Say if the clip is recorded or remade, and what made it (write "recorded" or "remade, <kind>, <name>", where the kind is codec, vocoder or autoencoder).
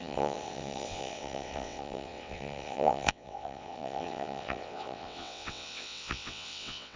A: remade, vocoder, WaveNeXt